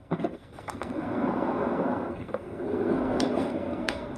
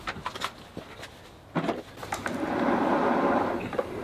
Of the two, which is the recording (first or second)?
second